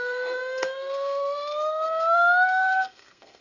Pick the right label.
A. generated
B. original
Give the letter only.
A